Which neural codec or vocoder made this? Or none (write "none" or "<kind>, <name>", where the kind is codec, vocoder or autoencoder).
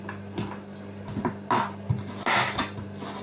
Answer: none